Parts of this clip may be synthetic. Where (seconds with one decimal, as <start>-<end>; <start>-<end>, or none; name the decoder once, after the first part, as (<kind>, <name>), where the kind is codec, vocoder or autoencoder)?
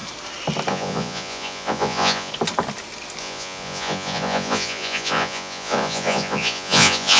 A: 0.7-2.3 (vocoder, Vocos); 3.2-7.2